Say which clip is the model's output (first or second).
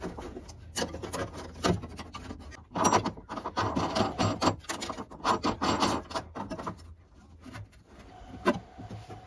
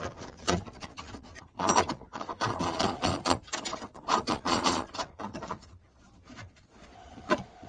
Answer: second